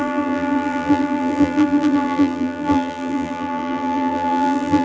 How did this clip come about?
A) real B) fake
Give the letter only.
B